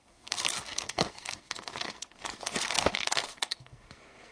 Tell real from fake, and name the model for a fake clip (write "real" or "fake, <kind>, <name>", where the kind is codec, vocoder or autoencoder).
fake, codec, SNAC